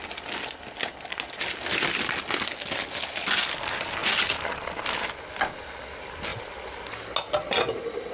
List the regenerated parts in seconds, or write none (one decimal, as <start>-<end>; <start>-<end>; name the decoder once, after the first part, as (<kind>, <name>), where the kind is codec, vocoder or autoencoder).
none